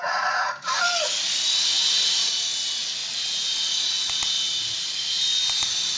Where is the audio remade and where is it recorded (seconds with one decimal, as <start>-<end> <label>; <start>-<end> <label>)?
0.0-0.8 remade; 0.8-6.0 recorded